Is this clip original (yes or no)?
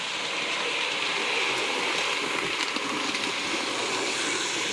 yes